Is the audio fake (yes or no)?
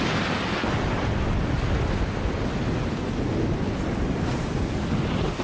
no